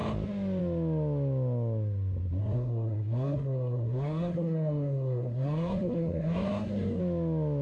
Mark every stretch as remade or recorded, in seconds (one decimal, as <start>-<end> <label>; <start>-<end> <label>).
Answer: 0.0-2.4 recorded; 2.4-7.0 remade; 7.0-7.6 recorded